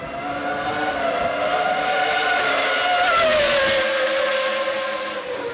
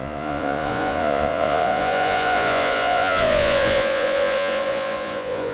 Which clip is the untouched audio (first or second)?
first